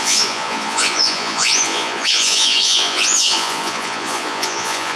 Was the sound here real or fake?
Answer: fake